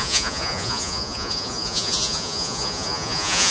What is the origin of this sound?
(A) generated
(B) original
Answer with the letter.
A